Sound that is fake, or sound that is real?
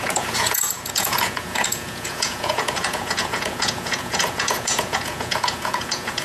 fake